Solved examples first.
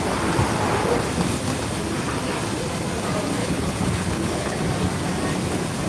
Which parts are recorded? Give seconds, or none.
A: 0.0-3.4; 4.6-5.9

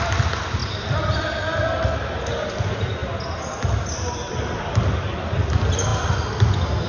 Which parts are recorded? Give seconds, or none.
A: 0.0-6.9

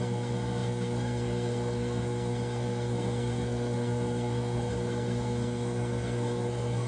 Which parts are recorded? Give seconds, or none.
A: none

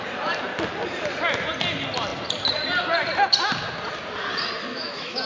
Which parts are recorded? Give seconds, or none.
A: 0.0-4.7

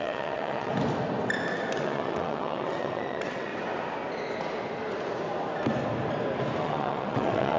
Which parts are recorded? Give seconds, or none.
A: 0.7-1.8; 3.5-6.6